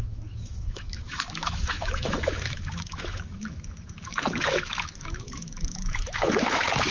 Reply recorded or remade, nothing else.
remade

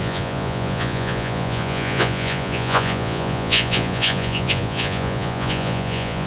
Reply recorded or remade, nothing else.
remade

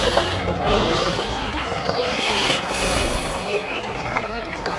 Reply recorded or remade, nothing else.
remade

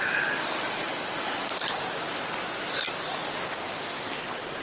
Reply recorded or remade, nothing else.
recorded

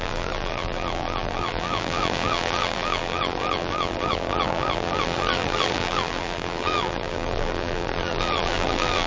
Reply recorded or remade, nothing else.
remade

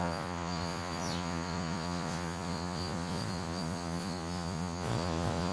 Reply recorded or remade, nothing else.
remade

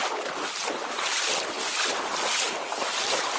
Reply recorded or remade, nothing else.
recorded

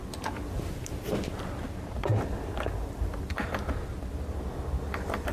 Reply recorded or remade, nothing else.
recorded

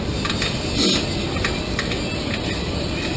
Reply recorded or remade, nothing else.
recorded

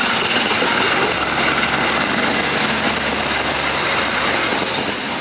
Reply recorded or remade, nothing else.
recorded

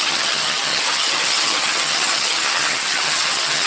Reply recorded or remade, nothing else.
remade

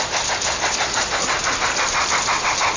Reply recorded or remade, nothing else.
recorded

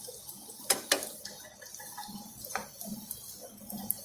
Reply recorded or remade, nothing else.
recorded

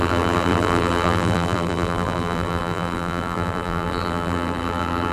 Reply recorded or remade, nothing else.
remade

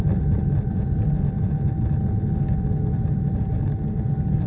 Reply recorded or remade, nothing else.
recorded